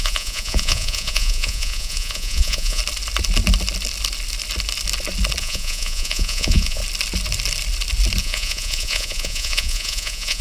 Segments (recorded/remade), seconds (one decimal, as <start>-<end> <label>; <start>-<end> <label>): 0.0-2.8 remade; 2.8-5.4 recorded; 5.4-6.8 remade; 6.8-8.2 recorded; 8.2-10.4 remade